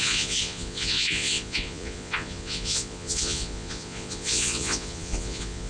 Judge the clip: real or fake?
fake